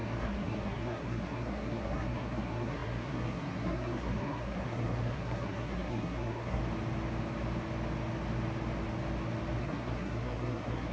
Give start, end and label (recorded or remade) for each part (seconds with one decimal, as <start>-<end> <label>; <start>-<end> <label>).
0.0-6.6 remade; 6.6-9.6 recorded; 9.6-10.9 remade